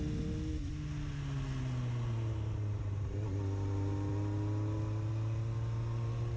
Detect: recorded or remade recorded